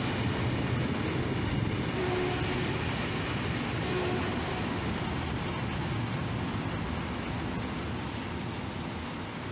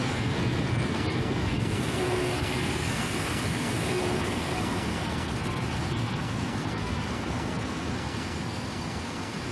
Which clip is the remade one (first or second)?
second